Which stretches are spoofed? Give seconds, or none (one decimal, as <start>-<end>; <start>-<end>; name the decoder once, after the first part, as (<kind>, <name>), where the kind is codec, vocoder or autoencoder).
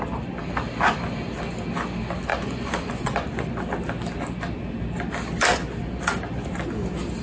2.3-3.5 (vocoder, Vocos)